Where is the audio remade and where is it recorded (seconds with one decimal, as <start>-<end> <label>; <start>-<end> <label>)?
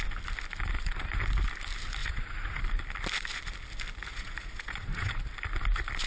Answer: 0.0-2.0 recorded; 2.0-2.6 remade; 2.6-4.1 recorded; 4.1-5.2 remade; 5.2-6.1 recorded